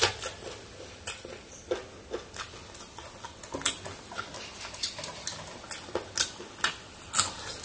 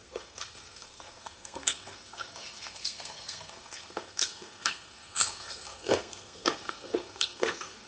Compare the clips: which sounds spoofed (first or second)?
second